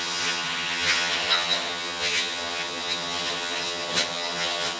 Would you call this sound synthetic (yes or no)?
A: yes